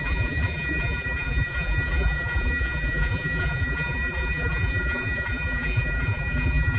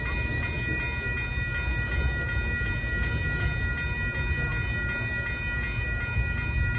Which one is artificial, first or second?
first